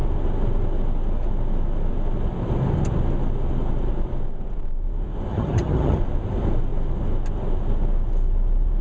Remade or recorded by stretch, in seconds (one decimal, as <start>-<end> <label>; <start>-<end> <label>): 0.0-5.3 recorded; 5.3-6.0 remade; 6.0-8.8 recorded